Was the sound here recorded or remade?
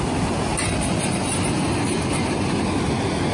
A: recorded